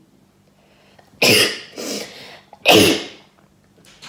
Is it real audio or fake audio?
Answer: real